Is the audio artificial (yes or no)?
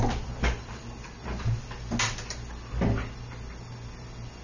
no